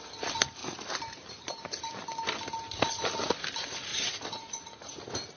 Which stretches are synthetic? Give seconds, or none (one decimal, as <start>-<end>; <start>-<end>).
3.9-4.9